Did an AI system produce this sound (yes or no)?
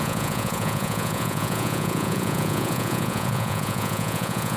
yes